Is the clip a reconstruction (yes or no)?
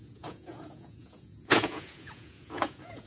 yes